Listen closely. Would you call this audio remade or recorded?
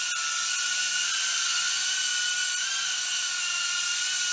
recorded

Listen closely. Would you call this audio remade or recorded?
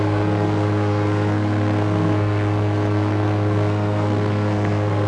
remade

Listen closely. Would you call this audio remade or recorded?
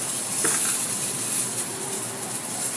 recorded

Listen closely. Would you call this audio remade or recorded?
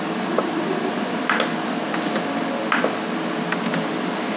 recorded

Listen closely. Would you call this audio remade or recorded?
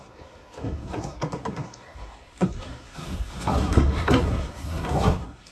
remade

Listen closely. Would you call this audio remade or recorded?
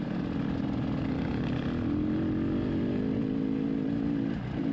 recorded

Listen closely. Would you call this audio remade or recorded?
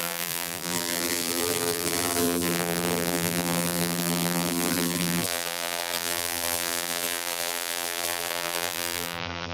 remade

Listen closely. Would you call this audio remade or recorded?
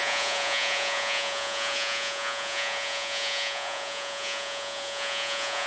remade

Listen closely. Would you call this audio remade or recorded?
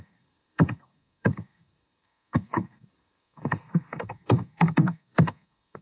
remade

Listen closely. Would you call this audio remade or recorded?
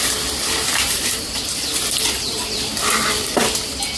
recorded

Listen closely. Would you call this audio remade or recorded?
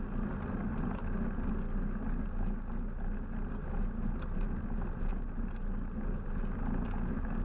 recorded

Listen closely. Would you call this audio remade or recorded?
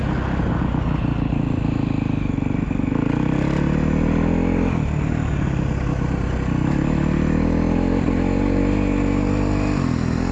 recorded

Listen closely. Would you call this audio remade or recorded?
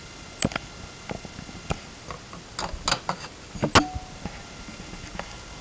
recorded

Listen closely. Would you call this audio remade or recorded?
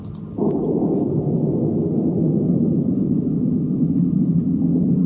remade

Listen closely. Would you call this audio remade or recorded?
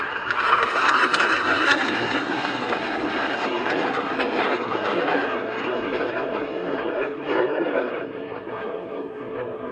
remade